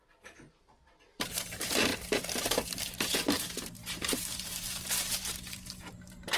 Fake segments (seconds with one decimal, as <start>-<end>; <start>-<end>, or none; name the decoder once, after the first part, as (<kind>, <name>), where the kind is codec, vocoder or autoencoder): 0.0-6.4 (vocoder, BigVGAN v2)

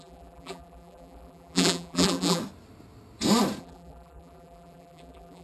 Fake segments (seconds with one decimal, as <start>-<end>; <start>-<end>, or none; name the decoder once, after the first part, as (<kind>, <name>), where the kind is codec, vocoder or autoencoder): 0.0-2.4 (vocoder, BigVGAN v2); 3.6-5.4

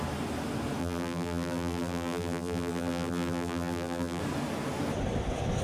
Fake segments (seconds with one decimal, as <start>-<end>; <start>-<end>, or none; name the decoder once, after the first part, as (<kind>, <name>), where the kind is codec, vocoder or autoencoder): 0.8-4.2 (vocoder, BigVGAN v2)